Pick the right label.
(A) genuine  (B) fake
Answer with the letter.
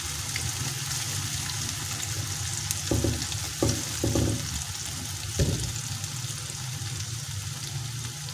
A